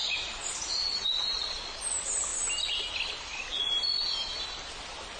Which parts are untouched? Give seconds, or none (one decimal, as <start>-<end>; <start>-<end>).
1.6-5.2

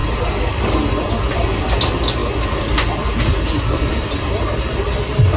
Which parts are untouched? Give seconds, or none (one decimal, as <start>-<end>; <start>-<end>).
0.0-5.4

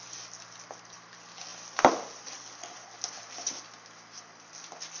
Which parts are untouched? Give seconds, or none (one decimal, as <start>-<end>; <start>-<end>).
0.0-5.0

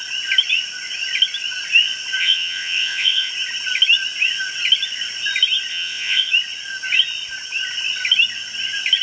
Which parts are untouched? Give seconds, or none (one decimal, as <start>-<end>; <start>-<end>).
0.0-2.2; 3.3-5.7; 6.3-9.0

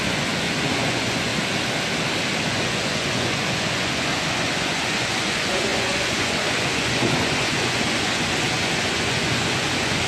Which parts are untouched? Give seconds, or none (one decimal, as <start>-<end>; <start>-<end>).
1.3-2.4

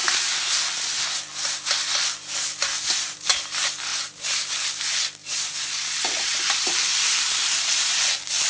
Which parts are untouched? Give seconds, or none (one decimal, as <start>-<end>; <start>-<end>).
0.8-5.2; 8.0-8.5

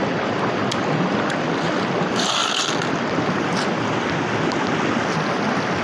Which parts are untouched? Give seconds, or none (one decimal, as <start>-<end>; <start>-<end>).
0.0-5.8